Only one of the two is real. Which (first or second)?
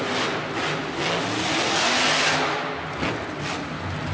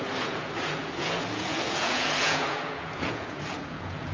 first